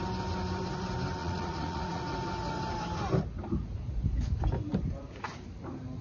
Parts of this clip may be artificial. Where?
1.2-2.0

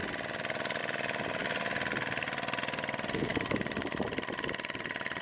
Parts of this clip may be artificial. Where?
none

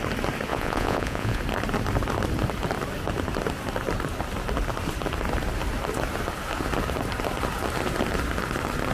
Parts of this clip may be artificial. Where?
0.5-1.4

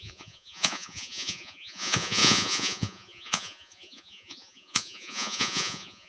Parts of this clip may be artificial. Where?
0.0-6.1

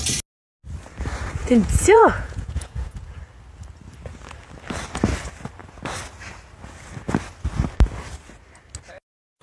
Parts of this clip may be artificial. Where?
1.4-3.2

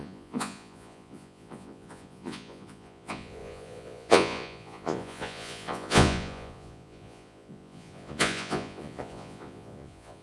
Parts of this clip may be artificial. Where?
0.0-10.2